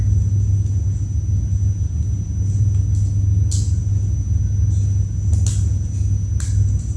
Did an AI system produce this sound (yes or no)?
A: no